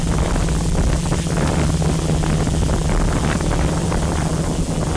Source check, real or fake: real